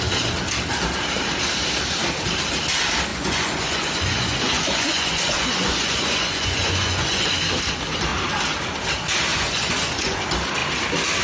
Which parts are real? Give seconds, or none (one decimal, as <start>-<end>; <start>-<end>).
0.0-3.1; 7.3-9.3; 10.2-11.2